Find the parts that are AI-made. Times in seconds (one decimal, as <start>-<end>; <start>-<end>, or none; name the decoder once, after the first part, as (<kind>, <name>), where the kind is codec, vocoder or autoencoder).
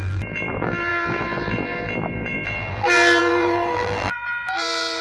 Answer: 0.0-5.0 (vocoder, BigVGAN v2)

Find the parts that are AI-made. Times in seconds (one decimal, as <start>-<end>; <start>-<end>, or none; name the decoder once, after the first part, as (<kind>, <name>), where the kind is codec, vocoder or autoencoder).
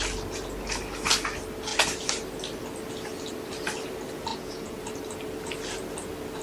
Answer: 4.3-4.8 (vocoder, Vocos)